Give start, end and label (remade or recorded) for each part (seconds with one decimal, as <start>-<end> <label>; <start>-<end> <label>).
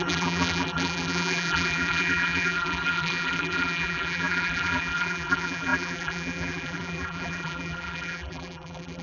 0.0-9.0 remade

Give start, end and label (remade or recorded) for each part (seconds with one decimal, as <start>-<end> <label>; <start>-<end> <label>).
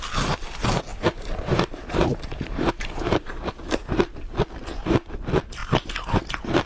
0.0-0.9 recorded; 0.9-3.5 remade; 3.5-5.6 recorded; 5.6-6.2 remade; 6.2-6.7 recorded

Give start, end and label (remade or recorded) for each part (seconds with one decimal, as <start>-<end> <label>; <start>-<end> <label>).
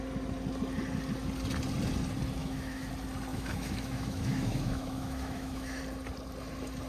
0.0-2.4 recorded; 2.4-2.9 remade; 2.9-3.3 recorded; 3.3-5.8 remade; 5.8-6.9 recorded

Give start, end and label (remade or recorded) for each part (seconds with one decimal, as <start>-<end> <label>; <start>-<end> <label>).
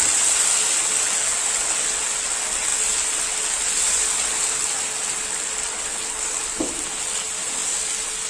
0.0-8.3 recorded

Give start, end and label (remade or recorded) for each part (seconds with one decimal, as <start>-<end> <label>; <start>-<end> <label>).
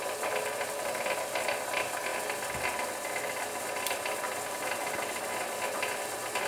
0.0-6.5 recorded